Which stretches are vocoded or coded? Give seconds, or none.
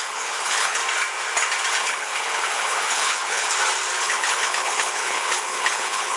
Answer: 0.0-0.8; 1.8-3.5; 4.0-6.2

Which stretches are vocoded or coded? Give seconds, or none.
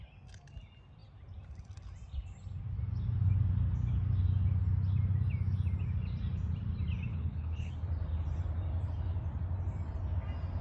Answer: 7.1-7.7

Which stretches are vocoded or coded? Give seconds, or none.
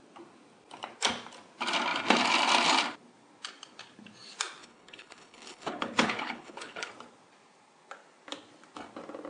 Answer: 4.6-6.9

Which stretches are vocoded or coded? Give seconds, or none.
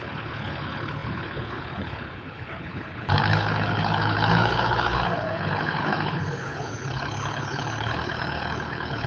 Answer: 0.0-9.1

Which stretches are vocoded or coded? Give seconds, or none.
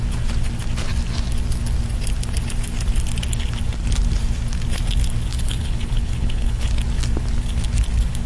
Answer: 5.3-6.7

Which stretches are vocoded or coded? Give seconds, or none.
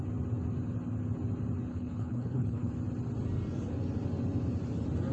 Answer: 1.7-2.7